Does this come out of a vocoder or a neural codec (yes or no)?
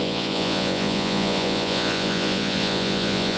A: yes